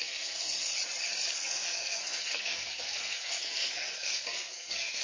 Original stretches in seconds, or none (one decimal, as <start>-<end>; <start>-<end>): 0.7-1.3